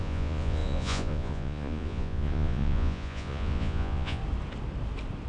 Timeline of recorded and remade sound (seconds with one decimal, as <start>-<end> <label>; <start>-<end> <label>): 0.0-4.2 remade; 4.2-5.3 recorded

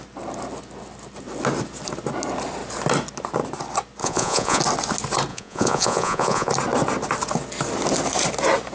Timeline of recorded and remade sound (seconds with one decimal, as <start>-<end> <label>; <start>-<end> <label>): 0.0-4.0 recorded; 4.0-4.6 remade; 4.6-5.3 recorded; 5.3-6.5 remade; 6.5-8.7 recorded

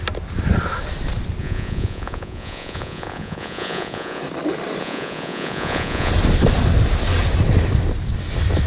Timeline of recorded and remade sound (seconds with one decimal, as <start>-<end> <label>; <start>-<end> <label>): 0.0-1.4 recorded; 1.4-4.2 remade; 4.2-4.8 recorded; 4.8-6.1 remade; 6.1-8.7 recorded

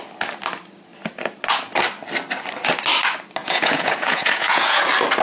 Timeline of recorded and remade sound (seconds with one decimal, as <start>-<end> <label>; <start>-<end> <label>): 0.0-3.4 recorded; 3.4-4.8 remade; 4.8-5.2 recorded

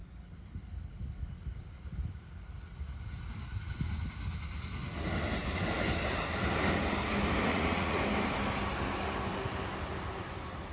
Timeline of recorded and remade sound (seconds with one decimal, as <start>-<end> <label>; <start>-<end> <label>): 0.0-7.5 recorded; 7.5-8.0 remade; 8.0-10.7 recorded

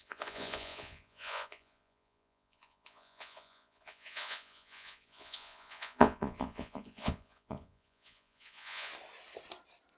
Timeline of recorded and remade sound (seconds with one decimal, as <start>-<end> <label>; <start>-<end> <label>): 0.0-8.9 remade; 8.9-10.0 recorded

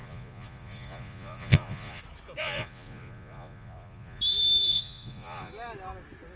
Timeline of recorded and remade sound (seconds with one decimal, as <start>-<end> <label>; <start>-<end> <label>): 0.0-2.0 remade; 2.0-2.4 recorded; 2.4-4.2 remade; 4.2-4.7 recorded; 4.7-5.5 remade; 5.5-6.4 recorded